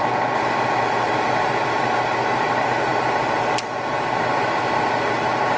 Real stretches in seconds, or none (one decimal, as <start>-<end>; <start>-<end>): 0.0-5.6